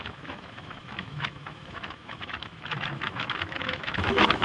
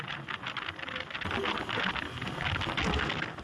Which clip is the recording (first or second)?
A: second